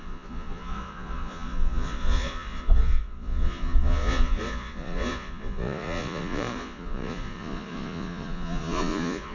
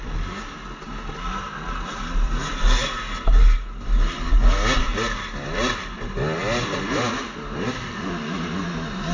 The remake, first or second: first